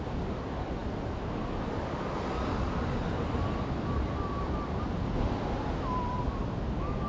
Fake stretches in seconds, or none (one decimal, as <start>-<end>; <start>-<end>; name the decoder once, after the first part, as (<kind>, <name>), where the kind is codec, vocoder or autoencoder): none